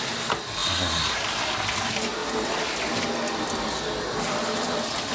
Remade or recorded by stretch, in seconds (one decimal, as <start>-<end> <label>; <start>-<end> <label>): 0.0-5.1 recorded